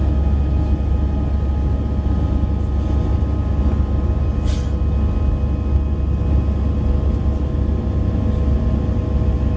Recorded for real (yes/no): yes